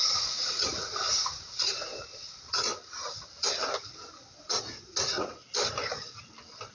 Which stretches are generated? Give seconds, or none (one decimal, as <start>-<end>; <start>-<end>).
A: 0.0-2.7; 4.3-5.3